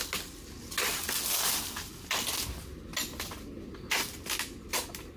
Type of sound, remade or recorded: recorded